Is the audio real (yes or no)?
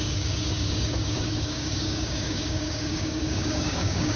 no